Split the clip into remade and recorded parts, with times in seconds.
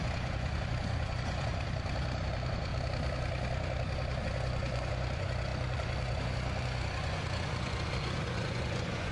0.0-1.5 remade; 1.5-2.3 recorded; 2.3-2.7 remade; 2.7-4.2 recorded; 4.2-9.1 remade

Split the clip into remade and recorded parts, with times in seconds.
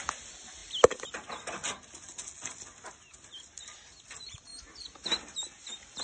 0.0-0.6 remade; 0.6-2.9 recorded; 2.9-4.5 remade; 4.5-6.0 recorded